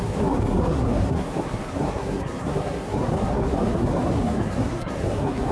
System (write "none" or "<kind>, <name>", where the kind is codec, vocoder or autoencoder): codec, SNAC